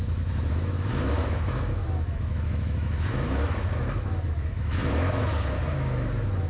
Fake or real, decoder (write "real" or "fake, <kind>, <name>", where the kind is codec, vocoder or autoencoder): fake, autoencoder, DAC-VAE